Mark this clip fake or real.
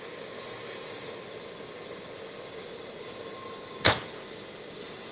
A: real